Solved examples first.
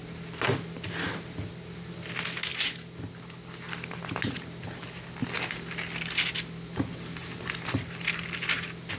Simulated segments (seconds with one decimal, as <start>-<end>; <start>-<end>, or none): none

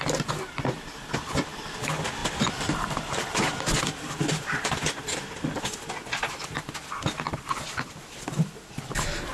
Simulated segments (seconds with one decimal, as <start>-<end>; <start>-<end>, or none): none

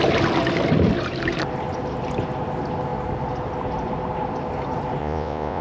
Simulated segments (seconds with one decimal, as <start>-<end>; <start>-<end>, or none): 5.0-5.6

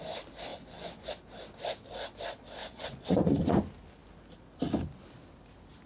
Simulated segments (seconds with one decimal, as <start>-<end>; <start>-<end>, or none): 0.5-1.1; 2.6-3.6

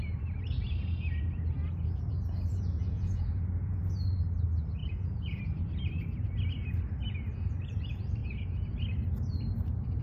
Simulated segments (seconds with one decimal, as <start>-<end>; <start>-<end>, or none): 1.6-3.8; 4.8-5.4; 8.2-8.7